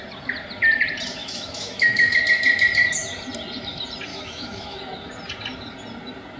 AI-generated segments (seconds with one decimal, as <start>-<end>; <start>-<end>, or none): 1.2-2.2; 4.1-4.8